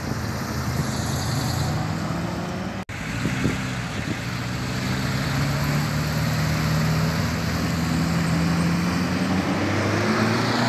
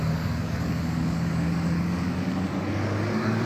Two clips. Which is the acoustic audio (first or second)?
first